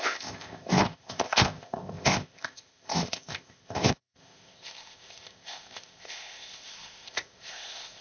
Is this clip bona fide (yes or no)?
no